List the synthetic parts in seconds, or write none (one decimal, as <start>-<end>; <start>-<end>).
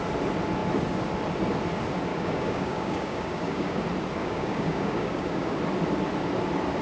2.1-3.8; 4.2-5.6